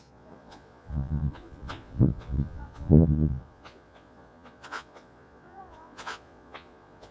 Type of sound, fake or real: fake